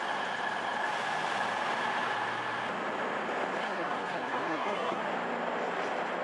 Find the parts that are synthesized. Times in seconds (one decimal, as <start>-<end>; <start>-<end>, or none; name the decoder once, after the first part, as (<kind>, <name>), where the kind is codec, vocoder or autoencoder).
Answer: 3.6-5.0 (codec, SNAC)